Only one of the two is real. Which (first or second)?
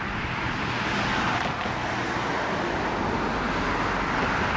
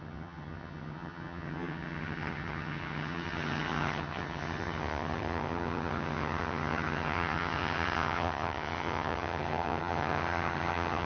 first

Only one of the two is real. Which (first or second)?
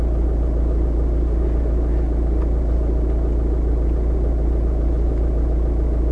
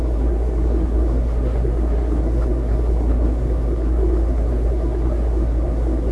first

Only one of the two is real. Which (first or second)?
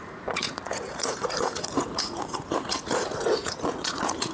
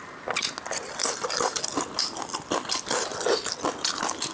second